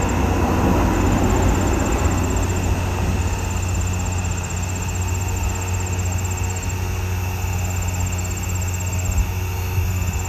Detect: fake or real real